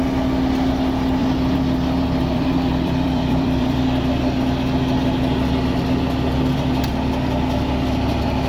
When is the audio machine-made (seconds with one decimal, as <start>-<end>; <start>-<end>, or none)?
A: 1.2-3.8